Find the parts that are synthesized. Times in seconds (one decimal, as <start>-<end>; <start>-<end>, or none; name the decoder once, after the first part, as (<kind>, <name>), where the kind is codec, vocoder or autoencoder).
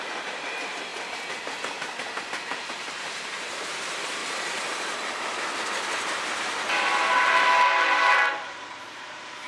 0.0-0.9 (vocoder, BigVGAN v2); 2.3-4.2; 7.1-9.5